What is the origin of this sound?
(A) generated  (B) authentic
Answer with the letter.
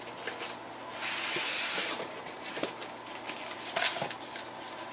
B